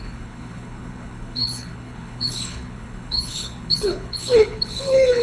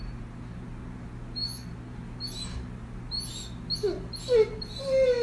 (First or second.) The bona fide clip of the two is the second